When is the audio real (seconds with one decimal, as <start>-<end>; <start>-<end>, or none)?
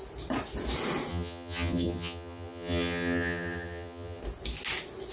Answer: 0.0-1.1; 4.2-5.1